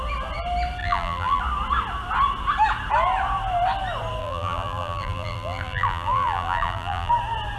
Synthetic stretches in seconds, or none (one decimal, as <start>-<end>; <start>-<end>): 0.8-1.4; 4.2-7.1